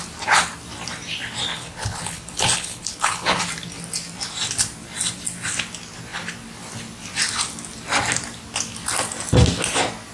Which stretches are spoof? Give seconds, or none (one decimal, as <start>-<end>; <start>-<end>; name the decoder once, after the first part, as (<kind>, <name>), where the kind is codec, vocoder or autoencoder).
1.5-3.4 (codec, HILCodec)